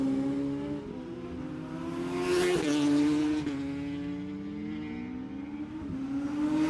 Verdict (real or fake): real